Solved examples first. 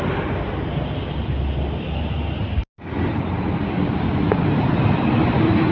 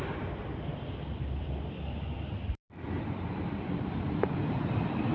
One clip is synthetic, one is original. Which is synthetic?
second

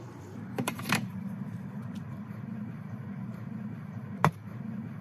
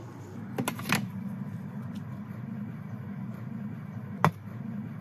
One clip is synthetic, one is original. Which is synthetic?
first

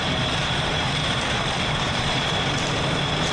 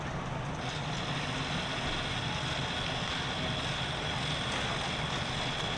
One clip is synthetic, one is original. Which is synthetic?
first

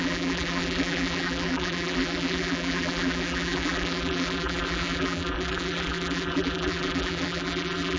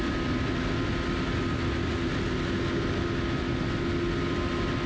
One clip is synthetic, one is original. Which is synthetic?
first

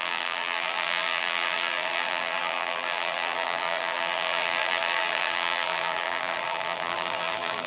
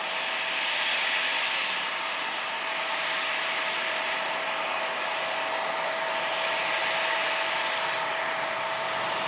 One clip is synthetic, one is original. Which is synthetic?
first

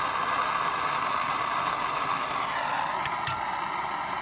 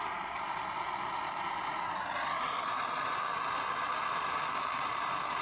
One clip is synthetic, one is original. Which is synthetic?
second